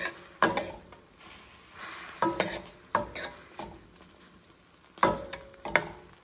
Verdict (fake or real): real